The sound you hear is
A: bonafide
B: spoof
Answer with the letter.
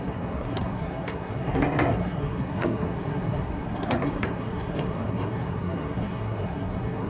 B